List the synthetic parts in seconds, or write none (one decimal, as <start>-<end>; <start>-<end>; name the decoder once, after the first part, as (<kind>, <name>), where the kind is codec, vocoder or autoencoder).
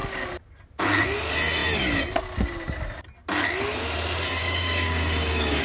4.4-5.6 (codec, DAC)